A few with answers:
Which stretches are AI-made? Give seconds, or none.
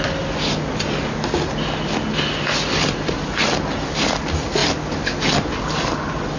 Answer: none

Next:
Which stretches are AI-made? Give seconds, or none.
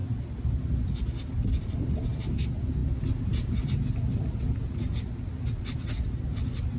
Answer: none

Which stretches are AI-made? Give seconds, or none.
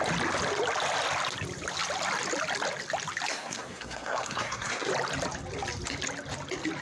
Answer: 3.3-4.9 (codec, SNAC)